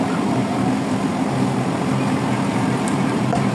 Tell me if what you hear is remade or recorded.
remade